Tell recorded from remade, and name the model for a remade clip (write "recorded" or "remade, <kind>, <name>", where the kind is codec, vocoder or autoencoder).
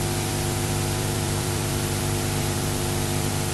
remade, vocoder, BigVGAN v2